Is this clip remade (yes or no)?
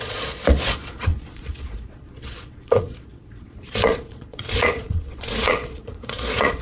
yes